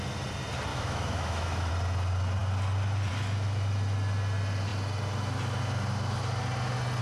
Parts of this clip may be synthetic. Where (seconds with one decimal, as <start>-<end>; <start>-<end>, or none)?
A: 0.7-1.7